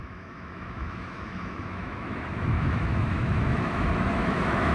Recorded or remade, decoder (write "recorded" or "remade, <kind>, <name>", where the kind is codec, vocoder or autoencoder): remade, autoencoder, DAC-VAE